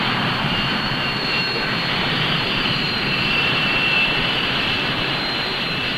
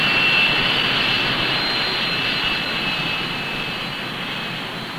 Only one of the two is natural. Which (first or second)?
second